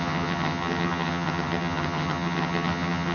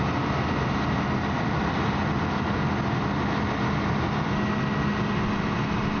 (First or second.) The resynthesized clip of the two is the first